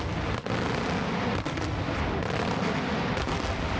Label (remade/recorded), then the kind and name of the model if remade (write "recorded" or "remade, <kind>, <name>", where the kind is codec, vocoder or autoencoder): recorded